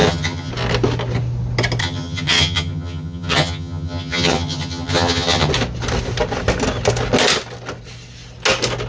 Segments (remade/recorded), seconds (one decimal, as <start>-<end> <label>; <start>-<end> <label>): 0.0-0.5 remade; 0.5-1.8 recorded; 1.8-5.5 remade; 5.5-8.9 recorded